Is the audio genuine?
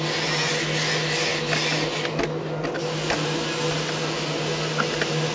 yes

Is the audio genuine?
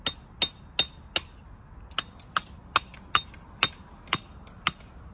yes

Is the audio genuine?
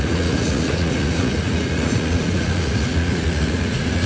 no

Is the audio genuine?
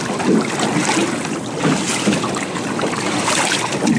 yes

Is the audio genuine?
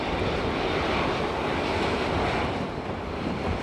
yes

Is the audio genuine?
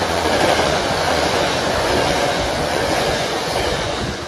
no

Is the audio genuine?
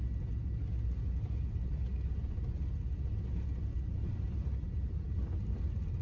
yes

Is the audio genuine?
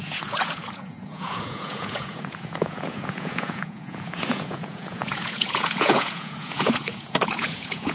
no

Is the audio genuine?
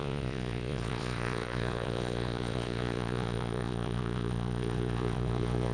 no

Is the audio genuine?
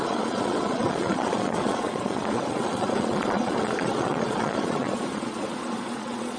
no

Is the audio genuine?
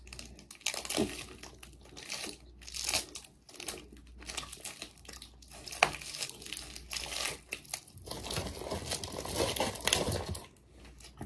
yes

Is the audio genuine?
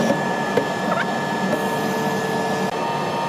yes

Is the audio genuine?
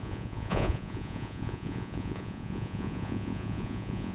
no